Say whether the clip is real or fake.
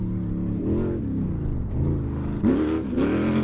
real